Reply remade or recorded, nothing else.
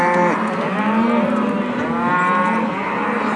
remade